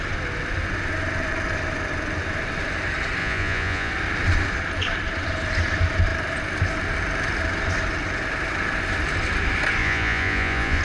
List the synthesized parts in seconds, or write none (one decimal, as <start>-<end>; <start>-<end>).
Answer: 3.2-3.9; 9.8-10.8